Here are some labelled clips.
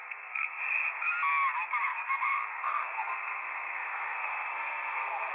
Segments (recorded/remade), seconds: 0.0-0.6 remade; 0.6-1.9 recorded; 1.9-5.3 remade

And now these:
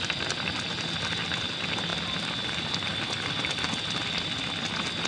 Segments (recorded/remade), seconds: 0.0-5.1 recorded